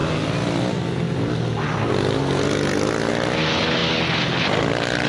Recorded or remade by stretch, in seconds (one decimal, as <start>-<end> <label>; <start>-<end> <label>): 0.0-5.1 recorded